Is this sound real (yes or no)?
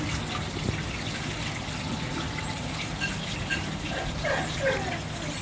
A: yes